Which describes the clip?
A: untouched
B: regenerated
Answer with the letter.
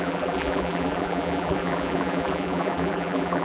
B